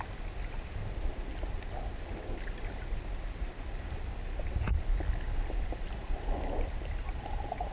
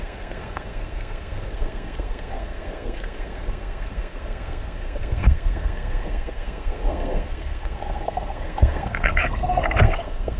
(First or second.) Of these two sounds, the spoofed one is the second